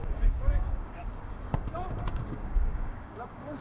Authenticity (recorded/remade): remade